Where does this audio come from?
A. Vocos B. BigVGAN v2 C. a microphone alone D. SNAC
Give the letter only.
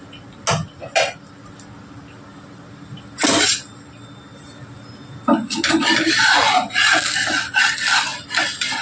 C